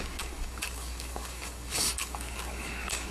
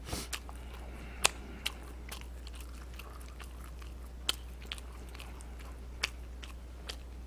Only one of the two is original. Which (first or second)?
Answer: second